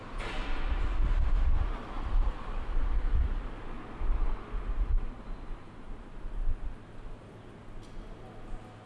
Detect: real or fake real